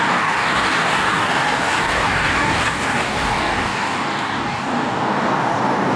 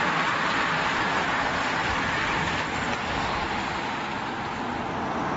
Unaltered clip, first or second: second